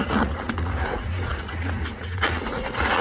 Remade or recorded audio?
remade